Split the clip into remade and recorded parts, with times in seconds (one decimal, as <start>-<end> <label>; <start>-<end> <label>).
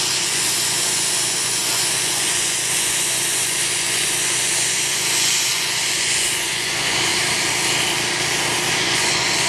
0.0-7.1 remade; 7.1-8.7 recorded; 8.7-9.5 remade